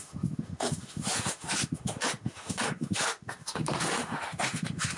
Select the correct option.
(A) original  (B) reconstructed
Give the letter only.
B